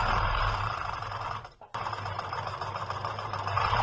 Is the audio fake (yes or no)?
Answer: yes